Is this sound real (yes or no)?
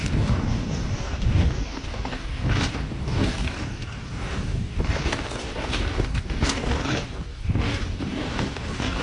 no